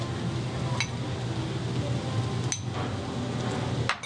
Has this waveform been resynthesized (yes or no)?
no